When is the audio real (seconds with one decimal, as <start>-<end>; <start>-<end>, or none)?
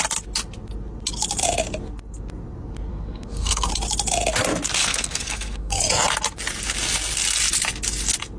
0.0-2.9; 3.7-4.8; 5.8-8.4